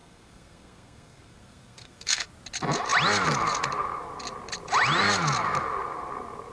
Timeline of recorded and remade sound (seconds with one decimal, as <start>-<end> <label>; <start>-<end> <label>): 0.0-2.3 remade; 2.3-6.5 recorded

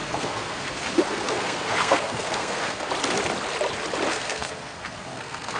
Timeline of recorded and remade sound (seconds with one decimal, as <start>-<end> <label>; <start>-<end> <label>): 0.0-2.9 remade; 2.9-4.1 recorded; 4.1-5.6 remade